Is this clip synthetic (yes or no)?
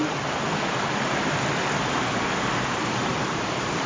no